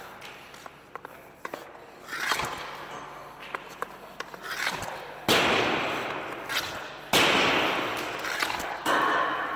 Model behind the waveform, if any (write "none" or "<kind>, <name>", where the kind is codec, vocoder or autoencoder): none